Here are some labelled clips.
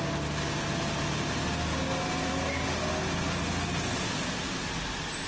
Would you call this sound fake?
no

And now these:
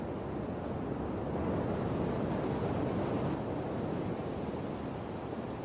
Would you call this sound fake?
no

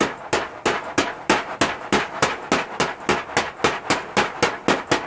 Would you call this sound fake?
no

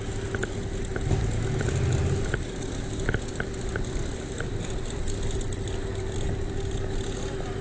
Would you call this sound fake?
no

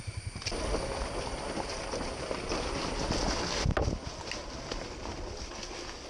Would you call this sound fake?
no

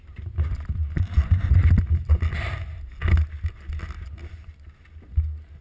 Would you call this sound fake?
no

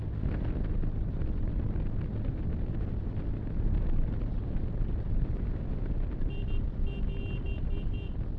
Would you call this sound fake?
no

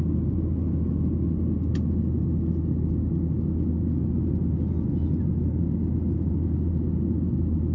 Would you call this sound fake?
no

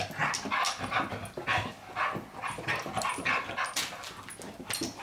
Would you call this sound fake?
no